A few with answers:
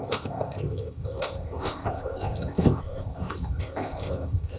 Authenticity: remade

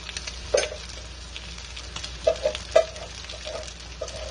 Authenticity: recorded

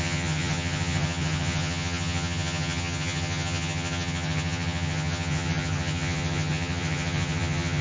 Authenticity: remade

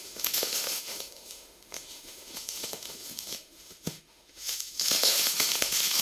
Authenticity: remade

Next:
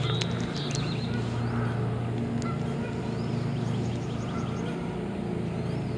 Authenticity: recorded